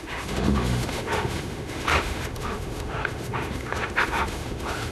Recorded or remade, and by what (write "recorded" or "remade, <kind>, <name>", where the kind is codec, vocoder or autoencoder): remade, autoencoder, DAC-VAE